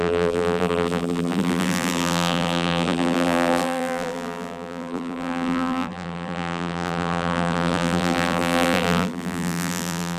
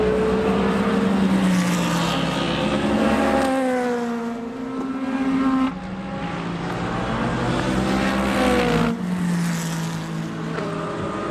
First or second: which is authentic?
second